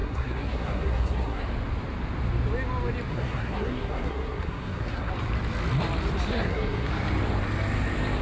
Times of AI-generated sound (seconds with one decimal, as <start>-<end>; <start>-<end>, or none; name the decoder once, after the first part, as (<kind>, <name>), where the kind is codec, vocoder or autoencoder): 0.0-1.4 (codec, SNAC); 3.1-5.1; 6.3-6.9